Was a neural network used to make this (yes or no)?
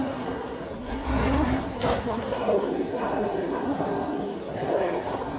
yes